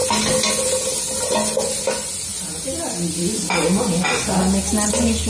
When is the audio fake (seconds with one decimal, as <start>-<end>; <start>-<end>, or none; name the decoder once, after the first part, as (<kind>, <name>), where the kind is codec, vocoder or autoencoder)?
none